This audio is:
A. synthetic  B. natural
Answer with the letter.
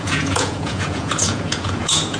A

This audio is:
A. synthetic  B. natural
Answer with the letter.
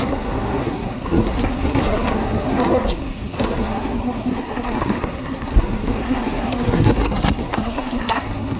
A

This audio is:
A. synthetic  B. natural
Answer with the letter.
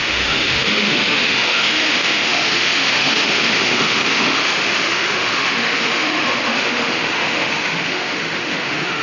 A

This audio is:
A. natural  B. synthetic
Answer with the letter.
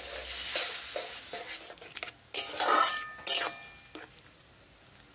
A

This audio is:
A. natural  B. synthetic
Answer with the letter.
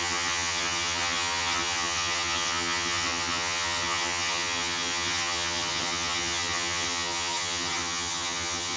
B